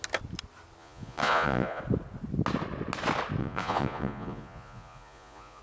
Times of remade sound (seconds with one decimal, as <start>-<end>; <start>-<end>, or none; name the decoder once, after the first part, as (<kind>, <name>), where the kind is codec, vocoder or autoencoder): 0.8-1.8 (vocoder, Vocos); 3.4-5.6